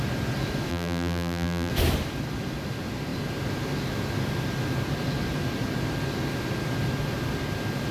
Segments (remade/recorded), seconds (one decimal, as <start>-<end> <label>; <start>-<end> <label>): 0.0-0.7 recorded; 0.7-1.7 remade; 1.7-7.9 recorded